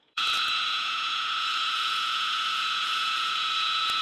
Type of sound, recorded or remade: remade